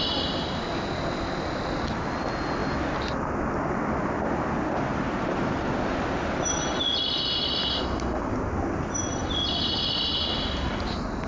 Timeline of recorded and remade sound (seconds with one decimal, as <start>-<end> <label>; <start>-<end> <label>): 0.0-11.3 recorded